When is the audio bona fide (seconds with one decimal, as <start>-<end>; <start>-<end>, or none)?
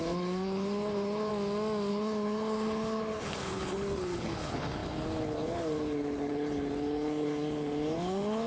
1.3-1.9